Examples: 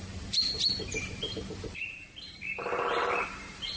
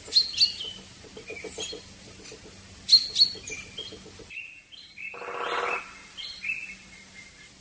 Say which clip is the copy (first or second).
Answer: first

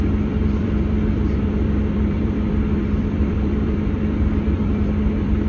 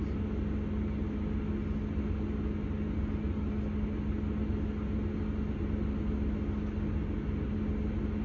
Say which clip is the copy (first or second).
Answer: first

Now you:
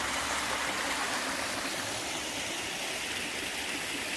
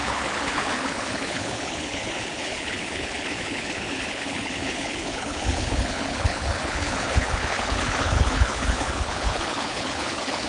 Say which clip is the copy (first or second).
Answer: second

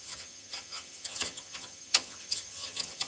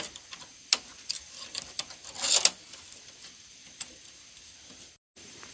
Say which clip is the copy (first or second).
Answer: first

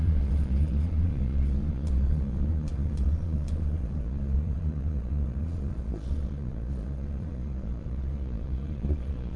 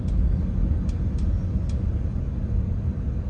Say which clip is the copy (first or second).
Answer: first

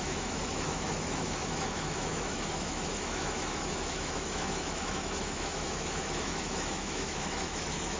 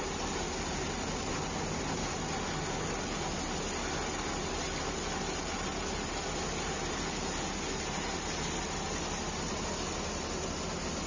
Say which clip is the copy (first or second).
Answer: first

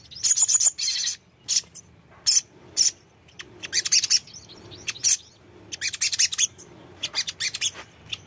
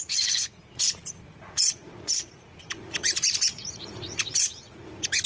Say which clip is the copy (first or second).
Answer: second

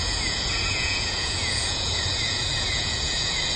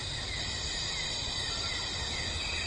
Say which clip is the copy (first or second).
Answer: first